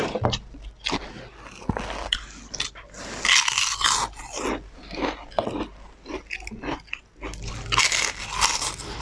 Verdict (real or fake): real